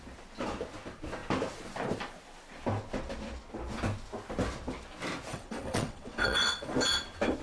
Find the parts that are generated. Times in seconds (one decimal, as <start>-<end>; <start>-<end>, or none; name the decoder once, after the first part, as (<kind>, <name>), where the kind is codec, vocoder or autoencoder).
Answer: 5.3-6.7 (vocoder, WaveNeXt)